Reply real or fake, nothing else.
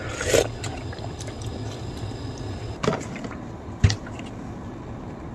real